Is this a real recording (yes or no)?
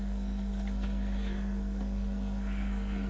no